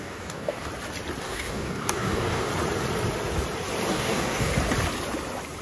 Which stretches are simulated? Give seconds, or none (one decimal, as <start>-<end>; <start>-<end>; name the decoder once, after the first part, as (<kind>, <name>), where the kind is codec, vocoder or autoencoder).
0.0-0.7 (codec, DAC); 1.2-2.5; 3.9-4.5